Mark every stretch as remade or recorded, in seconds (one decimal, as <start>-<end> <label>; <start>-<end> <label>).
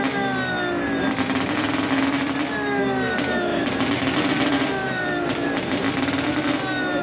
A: 0.0-3.5 recorded; 3.5-4.1 remade; 4.1-4.8 recorded; 4.8-5.5 remade; 5.5-7.0 recorded